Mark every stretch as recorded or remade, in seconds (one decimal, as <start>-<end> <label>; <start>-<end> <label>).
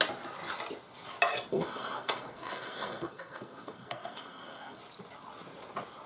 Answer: 0.0-1.5 recorded; 1.5-4.8 remade; 4.8-6.1 recorded